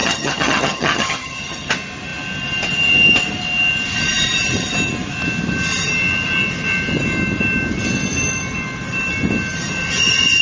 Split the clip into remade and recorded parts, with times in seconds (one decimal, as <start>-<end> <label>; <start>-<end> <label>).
0.0-1.7 remade; 1.7-10.4 recorded